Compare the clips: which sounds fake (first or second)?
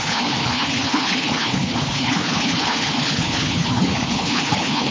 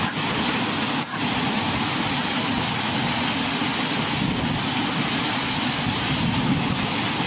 first